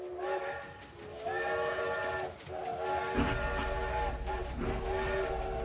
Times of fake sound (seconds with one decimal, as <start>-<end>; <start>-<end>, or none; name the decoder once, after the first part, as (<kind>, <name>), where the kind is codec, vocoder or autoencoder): 1.1-1.8 (autoencoder, DAC-VAE)